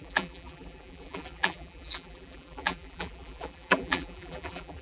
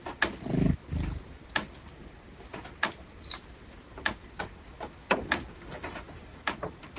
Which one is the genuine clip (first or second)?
second